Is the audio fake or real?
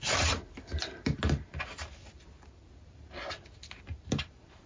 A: real